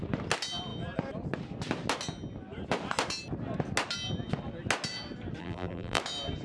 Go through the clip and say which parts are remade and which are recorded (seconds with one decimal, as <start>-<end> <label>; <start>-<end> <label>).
0.0-5.4 recorded; 5.4-6.0 remade; 6.0-6.4 recorded

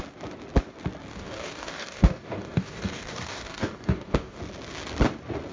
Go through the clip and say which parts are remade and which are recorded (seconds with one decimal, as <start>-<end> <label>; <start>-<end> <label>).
0.0-1.1 recorded; 1.1-4.4 remade; 4.4-5.5 recorded

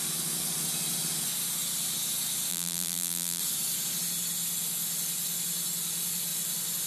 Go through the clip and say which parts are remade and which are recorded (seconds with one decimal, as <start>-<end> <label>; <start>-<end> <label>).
0.0-2.5 recorded; 2.5-3.4 remade; 3.4-6.9 recorded

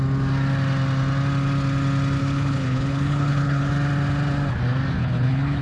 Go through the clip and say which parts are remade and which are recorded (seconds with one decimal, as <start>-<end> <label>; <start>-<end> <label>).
0.0-2.2 recorded; 2.2-3.7 remade; 3.7-5.0 recorded; 5.0-5.6 remade

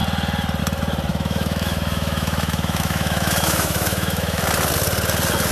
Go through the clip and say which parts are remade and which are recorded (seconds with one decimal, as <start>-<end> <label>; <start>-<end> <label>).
0.0-1.1 recorded; 1.1-4.4 remade; 4.4-5.5 recorded

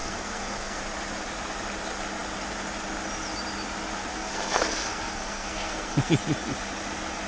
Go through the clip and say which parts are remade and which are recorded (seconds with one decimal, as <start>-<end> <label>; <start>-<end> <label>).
0.0-0.8 remade; 0.8-4.1 recorded; 4.1-6.1 remade; 6.1-7.3 recorded